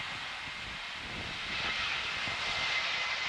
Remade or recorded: recorded